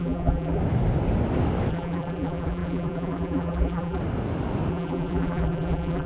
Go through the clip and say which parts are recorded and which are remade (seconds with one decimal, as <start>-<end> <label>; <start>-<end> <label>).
0.0-0.6 remade; 0.6-1.7 recorded; 1.7-4.0 remade; 4.0-4.7 recorded; 4.7-6.1 remade